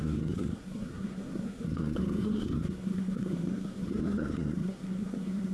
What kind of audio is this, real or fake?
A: fake